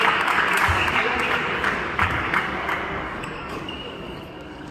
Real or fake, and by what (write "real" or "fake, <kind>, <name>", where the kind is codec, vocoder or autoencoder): fake, codec, DAC